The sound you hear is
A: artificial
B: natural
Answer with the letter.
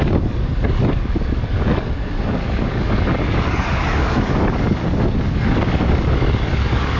A